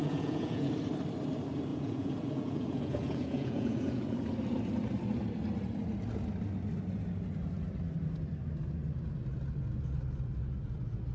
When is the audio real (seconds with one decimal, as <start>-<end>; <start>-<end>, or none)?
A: 0.7-1.7; 4.0-11.1